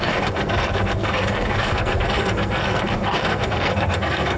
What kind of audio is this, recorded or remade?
remade